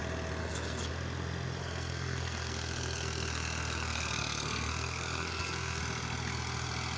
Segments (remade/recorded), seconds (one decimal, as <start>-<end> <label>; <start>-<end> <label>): 0.0-0.4 recorded; 0.4-0.9 remade; 0.9-1.6 recorded; 1.6-5.8 remade; 5.8-7.0 recorded